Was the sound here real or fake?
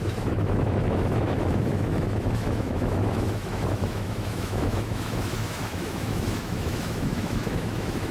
fake